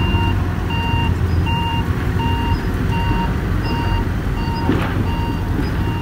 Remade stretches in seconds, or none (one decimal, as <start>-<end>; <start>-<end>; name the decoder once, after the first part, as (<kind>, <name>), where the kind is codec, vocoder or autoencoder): 1.0-4.6 (vocoder, BigVGAN v2)